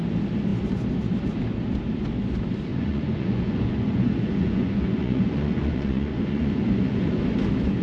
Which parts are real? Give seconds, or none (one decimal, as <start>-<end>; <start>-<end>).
0.0-2.7; 7.2-7.8